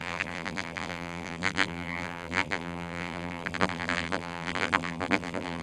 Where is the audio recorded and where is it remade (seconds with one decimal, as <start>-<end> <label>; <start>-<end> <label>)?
0.0-5.6 remade